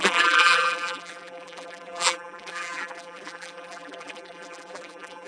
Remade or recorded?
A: remade